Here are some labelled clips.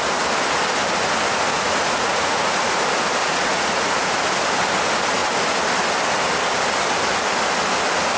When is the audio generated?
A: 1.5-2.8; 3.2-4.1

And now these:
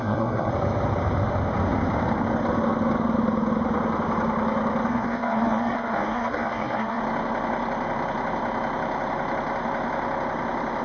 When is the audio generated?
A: 0.0-0.5; 4.9-7.0

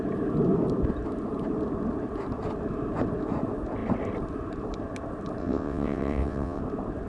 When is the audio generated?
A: 5.4-6.6

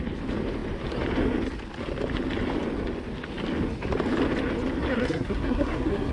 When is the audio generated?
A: 4.9-6.1